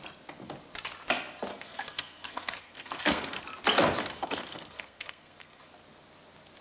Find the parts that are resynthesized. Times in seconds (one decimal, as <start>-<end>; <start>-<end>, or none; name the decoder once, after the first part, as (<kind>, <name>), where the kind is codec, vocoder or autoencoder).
1.5-3.4 (codec, SNAC); 4.1-5.6